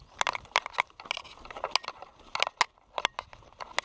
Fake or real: real